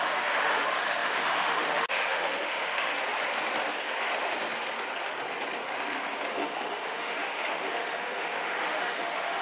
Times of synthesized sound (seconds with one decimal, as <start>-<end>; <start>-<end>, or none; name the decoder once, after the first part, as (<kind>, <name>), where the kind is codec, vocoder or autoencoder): 0.0-2.9 (autoencoder, DAC-VAE); 6.3-9.4